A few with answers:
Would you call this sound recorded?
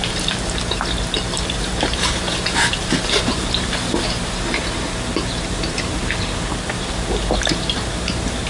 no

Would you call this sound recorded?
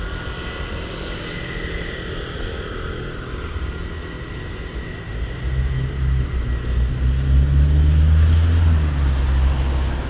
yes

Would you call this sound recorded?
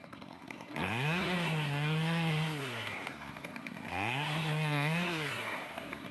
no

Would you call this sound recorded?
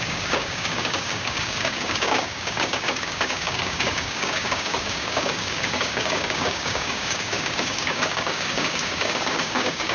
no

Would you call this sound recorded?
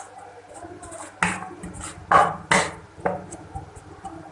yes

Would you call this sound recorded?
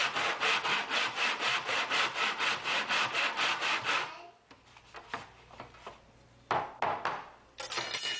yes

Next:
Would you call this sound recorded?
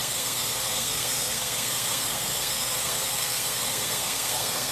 no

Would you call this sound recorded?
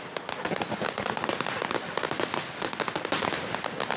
yes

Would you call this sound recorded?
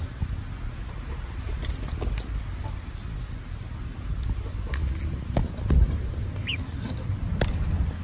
yes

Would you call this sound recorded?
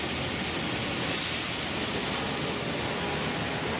yes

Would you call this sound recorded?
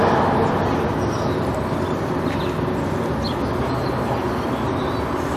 yes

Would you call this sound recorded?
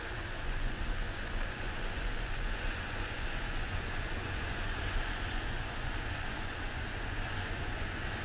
no